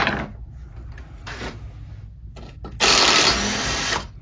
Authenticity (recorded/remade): recorded